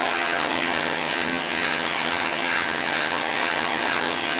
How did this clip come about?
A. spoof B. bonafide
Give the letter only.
A